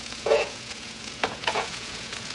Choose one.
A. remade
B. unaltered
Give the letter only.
A